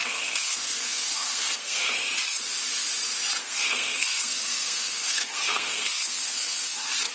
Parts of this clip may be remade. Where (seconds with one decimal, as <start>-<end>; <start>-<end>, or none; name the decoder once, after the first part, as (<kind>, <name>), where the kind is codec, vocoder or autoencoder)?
0.0-1.9 (codec, SNAC); 3.4-7.1